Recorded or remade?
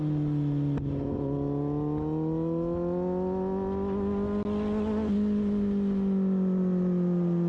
recorded